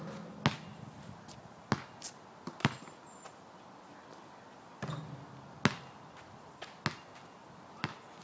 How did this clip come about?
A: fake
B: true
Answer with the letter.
B